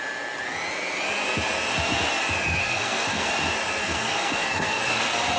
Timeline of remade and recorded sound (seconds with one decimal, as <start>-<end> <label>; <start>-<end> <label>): 0.0-2.6 recorded; 2.6-3.3 remade; 3.3-3.8 recorded; 3.8-4.8 remade; 4.8-5.4 recorded